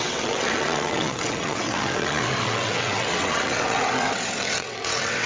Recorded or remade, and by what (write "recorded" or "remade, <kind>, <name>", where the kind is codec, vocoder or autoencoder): remade, vocoder, WaveNeXt